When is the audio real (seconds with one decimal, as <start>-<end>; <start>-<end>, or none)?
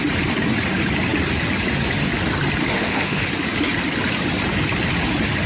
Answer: 0.0-2.6; 3.3-5.5